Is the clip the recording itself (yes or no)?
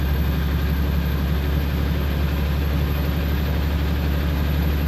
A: yes